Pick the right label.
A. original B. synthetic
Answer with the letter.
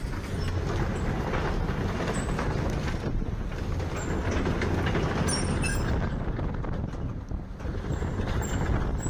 A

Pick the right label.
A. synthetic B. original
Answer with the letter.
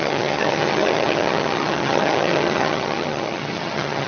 A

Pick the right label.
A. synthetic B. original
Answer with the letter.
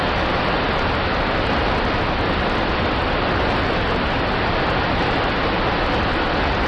B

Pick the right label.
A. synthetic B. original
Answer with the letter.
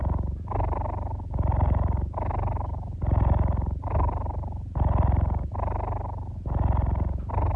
B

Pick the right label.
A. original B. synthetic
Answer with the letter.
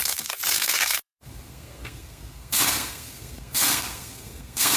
B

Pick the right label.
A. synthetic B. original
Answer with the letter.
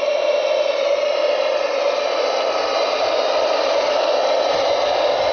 B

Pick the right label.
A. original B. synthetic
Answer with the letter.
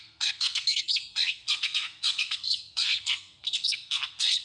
B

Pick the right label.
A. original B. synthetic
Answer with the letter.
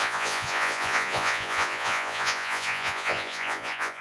B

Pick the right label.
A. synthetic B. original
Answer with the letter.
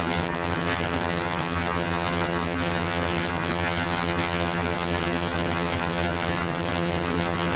A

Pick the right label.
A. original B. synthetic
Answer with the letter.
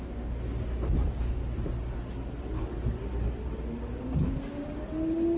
A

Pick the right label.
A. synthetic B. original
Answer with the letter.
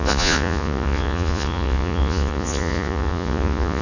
A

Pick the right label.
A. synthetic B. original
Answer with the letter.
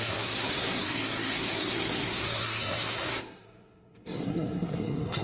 A